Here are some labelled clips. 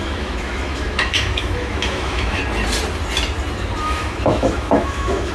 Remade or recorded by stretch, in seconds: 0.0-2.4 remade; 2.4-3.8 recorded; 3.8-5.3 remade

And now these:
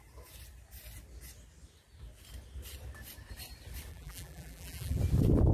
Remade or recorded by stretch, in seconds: 0.0-3.9 recorded; 3.9-5.0 remade; 5.0-5.5 recorded

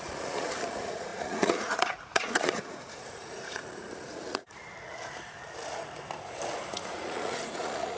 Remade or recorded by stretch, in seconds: 0.0-4.6 remade; 4.6-6.7 recorded; 6.7-8.0 remade

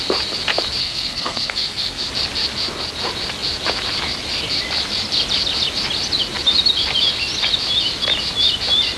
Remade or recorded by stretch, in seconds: 0.0-0.8 recorded; 0.8-2.1 remade; 2.1-9.0 recorded

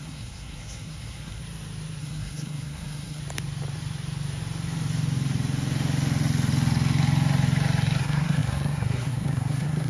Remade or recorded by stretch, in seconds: 0.0-1.4 remade; 1.4-2.0 recorded; 2.0-3.2 remade; 3.2-8.0 recorded; 8.0-9.9 remade

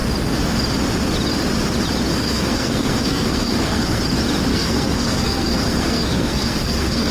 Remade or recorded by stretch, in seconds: 0.0-2.1 recorded; 2.1-4.0 remade; 4.0-4.5 recorded; 4.5-7.1 remade

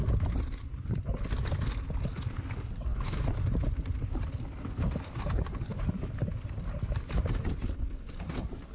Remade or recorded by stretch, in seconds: 0.0-2.9 recorded; 2.9-3.4 remade; 3.4-8.7 recorded